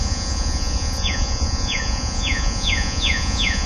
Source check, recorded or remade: remade